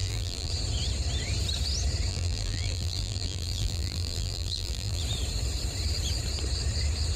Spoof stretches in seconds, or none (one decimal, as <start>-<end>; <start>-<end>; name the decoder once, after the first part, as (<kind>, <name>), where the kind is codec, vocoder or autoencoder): 0.0-0.5 (vocoder, BigVGAN v2); 2.1-5.0